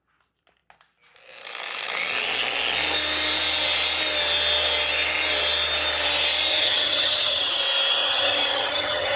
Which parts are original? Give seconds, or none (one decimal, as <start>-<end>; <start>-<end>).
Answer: 0.0-6.5; 7.6-8.0